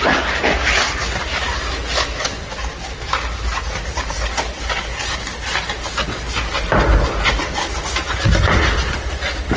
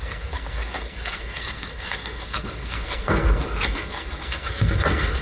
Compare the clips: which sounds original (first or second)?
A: first